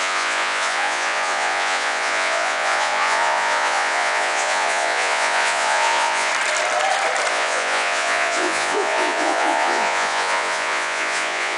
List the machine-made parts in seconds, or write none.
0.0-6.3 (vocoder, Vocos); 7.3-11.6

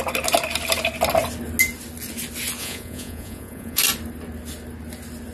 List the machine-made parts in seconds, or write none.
2.6-3.8 (vocoder, Vocos)